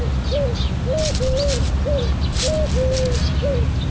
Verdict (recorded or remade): recorded